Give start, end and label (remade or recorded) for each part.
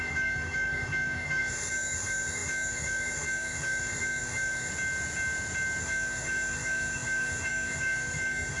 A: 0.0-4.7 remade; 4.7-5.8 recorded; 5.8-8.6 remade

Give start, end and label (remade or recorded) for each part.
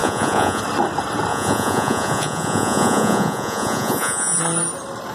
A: 0.0-0.6 remade; 0.6-1.3 recorded; 1.3-4.4 remade; 4.4-5.1 recorded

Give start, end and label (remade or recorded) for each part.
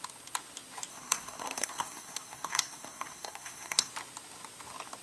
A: 0.0-0.9 recorded; 0.9-3.9 remade; 3.9-5.0 recorded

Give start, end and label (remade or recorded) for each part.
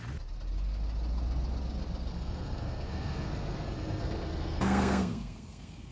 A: 0.0-2.1 recorded; 2.1-5.9 remade